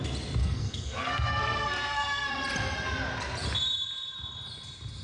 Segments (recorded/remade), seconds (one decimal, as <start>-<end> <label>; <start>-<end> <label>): 0.0-0.4 recorded; 0.4-2.3 remade; 2.3-5.0 recorded